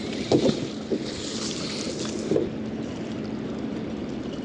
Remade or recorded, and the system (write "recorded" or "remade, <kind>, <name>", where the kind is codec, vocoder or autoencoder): recorded